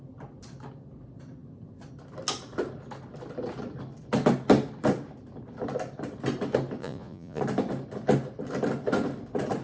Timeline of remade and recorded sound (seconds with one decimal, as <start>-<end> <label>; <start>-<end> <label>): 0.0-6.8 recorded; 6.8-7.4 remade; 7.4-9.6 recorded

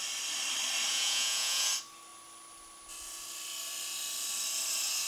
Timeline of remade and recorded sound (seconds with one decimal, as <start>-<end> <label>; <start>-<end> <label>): 0.0-0.9 recorded; 0.9-1.7 remade; 1.7-5.1 recorded

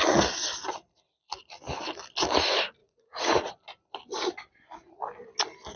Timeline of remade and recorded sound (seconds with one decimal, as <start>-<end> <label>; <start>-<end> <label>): 0.0-2.8 recorded; 2.8-3.5 remade; 3.5-5.8 recorded

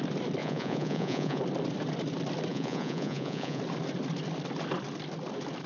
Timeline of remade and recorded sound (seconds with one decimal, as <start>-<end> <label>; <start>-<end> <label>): 0.0-0.4 recorded; 0.4-1.4 remade; 1.4-2.5 recorded; 2.5-3.6 remade; 3.6-5.7 recorded

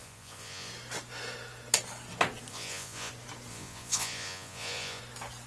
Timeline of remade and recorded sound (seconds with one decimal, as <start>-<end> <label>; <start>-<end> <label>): 0.0-0.7 remade; 0.7-2.5 recorded; 2.5-3.1 remade; 3.1-3.5 recorded; 3.5-5.0 remade; 5.0-5.5 recorded

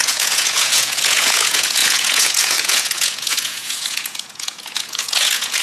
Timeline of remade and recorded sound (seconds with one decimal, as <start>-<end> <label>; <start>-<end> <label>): 0.0-5.6 remade